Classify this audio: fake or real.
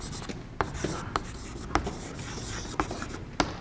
real